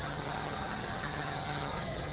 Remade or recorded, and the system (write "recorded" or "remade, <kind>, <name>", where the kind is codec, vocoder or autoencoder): remade, vocoder, HiFi-GAN